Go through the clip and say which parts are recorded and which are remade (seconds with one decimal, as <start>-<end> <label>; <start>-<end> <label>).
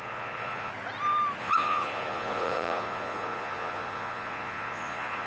0.0-0.7 remade; 0.7-1.4 recorded; 1.4-5.3 remade